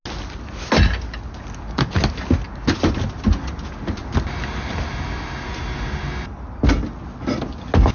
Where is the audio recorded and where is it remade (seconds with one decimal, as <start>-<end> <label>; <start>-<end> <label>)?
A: 0.0-7.9 recorded